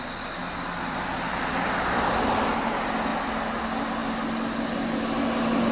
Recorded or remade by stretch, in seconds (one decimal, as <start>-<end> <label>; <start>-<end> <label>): 0.0-5.7 recorded